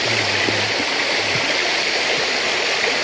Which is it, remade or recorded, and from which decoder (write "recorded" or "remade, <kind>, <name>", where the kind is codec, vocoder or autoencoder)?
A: recorded